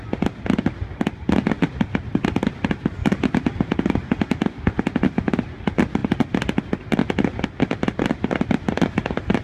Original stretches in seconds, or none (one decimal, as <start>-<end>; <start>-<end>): 0.0-9.4